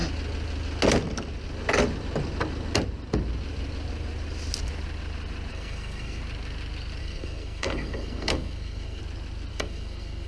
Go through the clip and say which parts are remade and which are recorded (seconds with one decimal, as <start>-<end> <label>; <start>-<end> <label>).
0.0-5.5 recorded; 5.5-6.2 remade; 6.2-7.0 recorded; 7.0-9.0 remade; 9.0-9.5 recorded; 9.5-10.3 remade